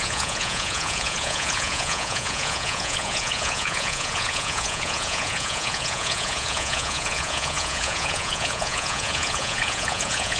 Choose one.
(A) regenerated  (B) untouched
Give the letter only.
A